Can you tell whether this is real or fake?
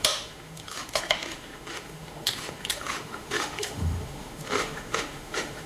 fake